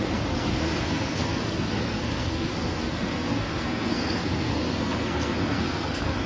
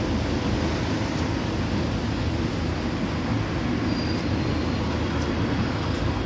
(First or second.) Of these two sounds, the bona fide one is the second